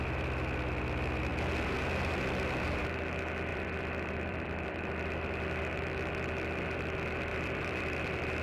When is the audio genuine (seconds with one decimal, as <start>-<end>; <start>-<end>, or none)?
0.0-3.5; 5.6-7.3